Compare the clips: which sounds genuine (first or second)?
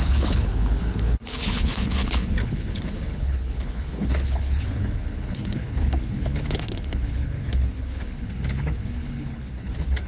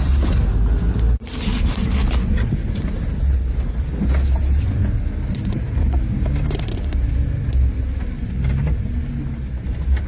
second